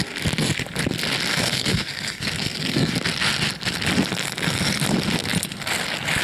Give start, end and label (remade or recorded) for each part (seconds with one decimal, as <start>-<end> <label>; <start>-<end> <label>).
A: 0.0-1.3 recorded; 1.3-2.9 remade; 2.9-6.2 recorded